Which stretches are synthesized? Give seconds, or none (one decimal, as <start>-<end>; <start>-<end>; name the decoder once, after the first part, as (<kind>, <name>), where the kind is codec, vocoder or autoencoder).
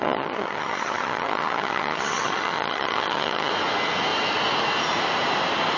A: 0.0-3.5 (vocoder, HiFi-GAN)